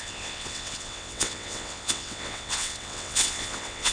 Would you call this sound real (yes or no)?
no